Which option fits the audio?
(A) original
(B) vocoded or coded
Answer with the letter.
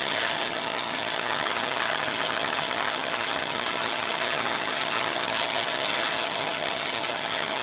B